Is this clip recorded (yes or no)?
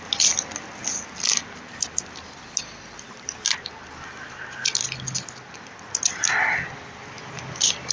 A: yes